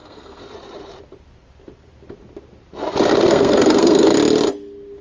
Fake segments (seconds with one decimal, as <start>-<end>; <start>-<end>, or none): 0.0-0.4; 3.3-4.1